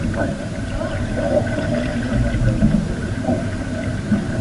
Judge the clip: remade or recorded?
remade